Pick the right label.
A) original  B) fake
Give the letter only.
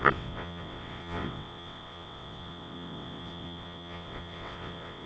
B